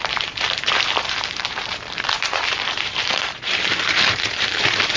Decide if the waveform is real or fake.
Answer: fake